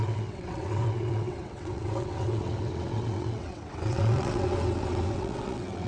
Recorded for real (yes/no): no